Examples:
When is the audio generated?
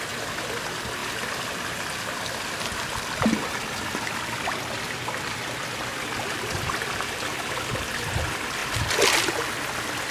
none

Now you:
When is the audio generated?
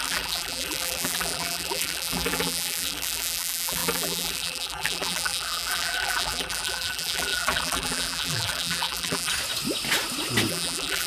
0.0-9.3 (vocoder, BigVGAN v2); 10.5-11.1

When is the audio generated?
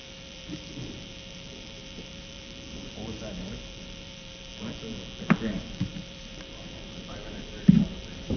0.0-4.5 (vocoder, BigVGAN v2); 5.5-8.4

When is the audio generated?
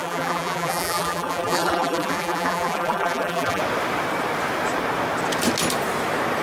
0.0-3.6 (vocoder, BigVGAN v2)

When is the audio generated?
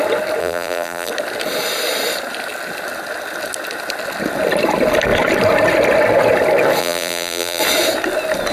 0.4-1.1 (vocoder, BigVGAN v2); 6.8-7.6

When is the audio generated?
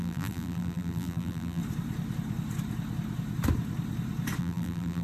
0.0-1.6 (vocoder, BigVGAN v2); 4.4-5.0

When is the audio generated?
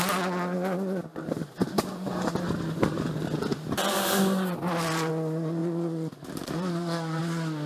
1.1-5.1 (vocoder, BigVGAN v2); 5.6-7.2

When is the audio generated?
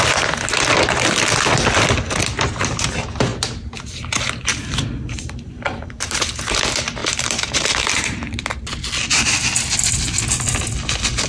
4.5-6.2 (vocoder, BigVGAN v2); 7.0-8.7